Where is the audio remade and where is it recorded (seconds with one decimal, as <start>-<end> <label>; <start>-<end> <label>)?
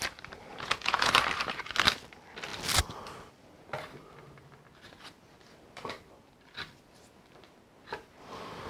0.0-0.5 recorded; 0.5-1.1 remade; 1.1-8.7 recorded